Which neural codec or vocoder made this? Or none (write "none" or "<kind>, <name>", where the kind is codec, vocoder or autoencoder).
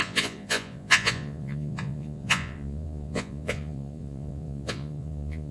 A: vocoder, Vocos